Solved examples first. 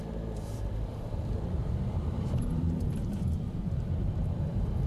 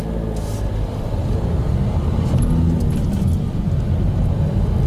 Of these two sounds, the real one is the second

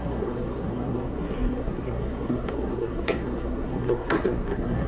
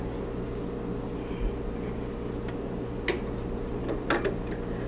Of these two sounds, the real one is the second